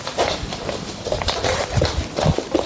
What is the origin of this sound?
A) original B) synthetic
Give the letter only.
A